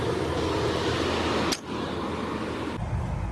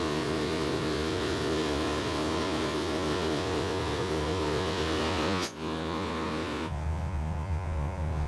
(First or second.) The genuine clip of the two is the first